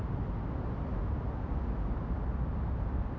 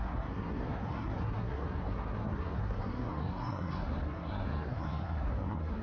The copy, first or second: second